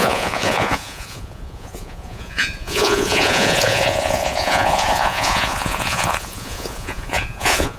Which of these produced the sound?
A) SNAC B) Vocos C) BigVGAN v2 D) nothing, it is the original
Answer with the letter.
B